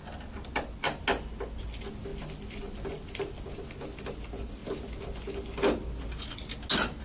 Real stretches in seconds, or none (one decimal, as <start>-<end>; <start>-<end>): 0.0-7.0